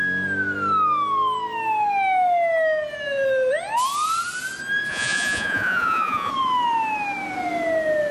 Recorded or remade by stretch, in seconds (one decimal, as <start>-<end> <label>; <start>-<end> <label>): 0.0-4.9 recorded; 4.9-6.3 remade; 6.3-8.1 recorded